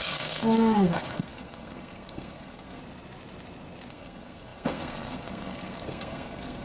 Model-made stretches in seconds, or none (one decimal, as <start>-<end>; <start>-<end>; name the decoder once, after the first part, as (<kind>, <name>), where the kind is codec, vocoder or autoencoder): 0.0-2.8 (codec, SNAC); 3.9-6.6